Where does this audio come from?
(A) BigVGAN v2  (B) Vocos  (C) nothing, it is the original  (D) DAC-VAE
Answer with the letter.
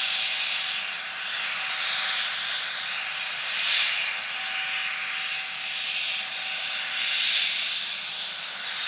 C